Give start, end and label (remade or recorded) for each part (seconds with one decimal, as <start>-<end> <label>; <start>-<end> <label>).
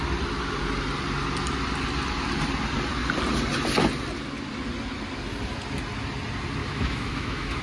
0.0-6.6 recorded; 6.6-7.6 remade